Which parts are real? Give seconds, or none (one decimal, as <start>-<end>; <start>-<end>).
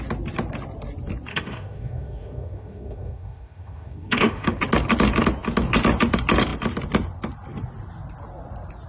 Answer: 0.0-1.3; 4.6-8.9